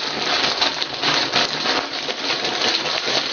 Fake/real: real